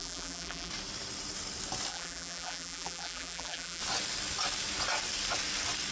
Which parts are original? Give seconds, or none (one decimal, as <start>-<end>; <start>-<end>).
0.7-1.9; 3.8-5.9